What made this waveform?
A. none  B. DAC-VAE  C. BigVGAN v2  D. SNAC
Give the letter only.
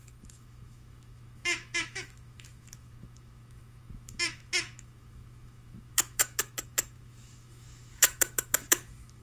B